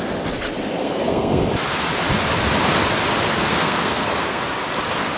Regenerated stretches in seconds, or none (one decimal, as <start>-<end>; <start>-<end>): 0.8-1.4; 3.5-4.4